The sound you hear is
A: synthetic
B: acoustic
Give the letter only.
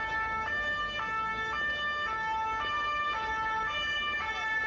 B